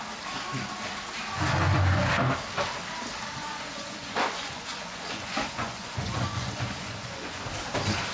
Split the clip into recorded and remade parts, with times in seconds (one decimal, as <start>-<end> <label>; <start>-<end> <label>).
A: 0.0-1.6 recorded; 1.6-2.1 remade; 2.1-3.4 recorded; 3.4-7.4 remade; 7.4-8.1 recorded